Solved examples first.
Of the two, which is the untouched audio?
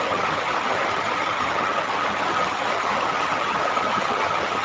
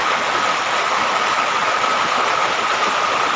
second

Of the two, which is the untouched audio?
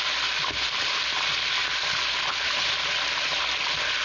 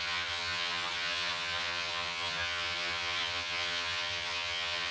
first